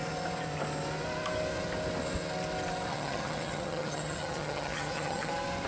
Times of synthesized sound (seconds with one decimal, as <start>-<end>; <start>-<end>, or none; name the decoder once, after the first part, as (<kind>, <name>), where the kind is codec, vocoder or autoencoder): 2.9-5.3 (vocoder, HiFi-GAN)